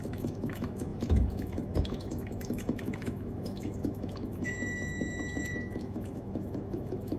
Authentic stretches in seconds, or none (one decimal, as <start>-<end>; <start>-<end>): none